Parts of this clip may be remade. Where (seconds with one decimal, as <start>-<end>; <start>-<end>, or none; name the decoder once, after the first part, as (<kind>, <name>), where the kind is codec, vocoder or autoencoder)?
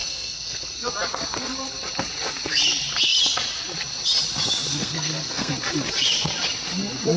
0.0-0.9 (codec, SNAC); 4.7-5.5